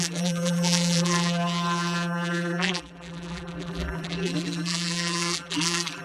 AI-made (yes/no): yes